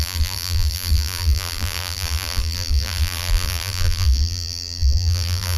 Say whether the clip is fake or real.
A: fake